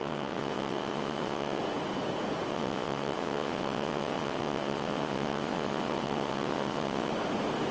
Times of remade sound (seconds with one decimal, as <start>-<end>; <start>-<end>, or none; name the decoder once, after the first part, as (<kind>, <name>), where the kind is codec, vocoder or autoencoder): 0.0-1.6 (vocoder, WaveNeXt); 2.5-7.1